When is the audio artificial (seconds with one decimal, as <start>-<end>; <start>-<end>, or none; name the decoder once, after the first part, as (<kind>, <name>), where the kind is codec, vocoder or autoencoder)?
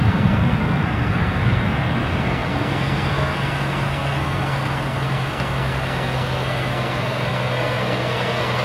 0.0-8.6 (codec, SNAC)